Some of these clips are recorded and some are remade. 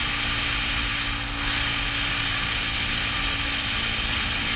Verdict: recorded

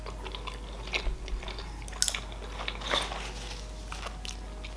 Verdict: recorded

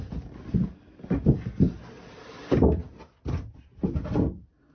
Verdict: recorded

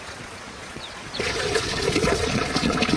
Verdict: remade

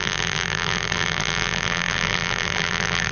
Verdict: remade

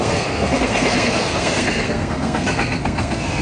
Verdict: remade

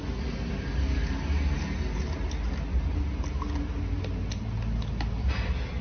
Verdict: recorded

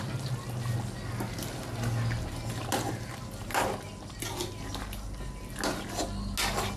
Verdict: recorded